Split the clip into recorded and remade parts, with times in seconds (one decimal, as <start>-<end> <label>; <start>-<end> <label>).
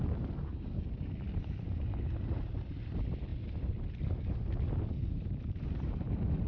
0.0-6.5 recorded